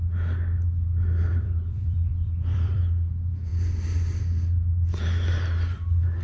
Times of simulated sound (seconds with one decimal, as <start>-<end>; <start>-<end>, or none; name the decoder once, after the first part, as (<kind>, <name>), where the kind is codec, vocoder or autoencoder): 1.3-2.8 (vocoder, BigVGAN v2)